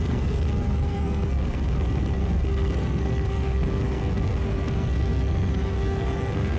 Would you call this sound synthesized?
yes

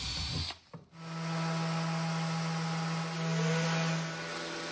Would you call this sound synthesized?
no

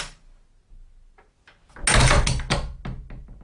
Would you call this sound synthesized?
no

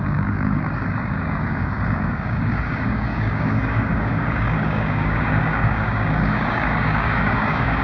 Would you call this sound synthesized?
yes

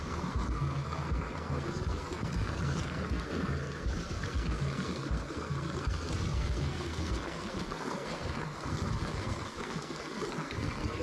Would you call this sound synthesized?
yes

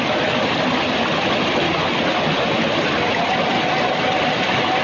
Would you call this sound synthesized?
no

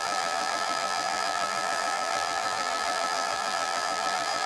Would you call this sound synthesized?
yes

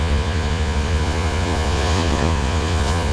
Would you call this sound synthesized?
yes